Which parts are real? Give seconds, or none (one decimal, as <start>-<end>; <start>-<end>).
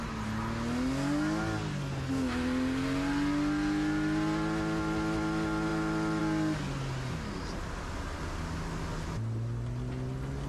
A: 0.0-10.5